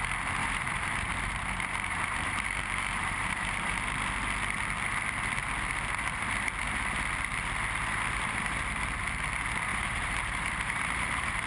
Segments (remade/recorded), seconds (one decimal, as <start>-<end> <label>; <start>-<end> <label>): 0.0-0.4 recorded; 0.4-4.0 remade; 4.0-9.7 recorded; 9.7-11.5 remade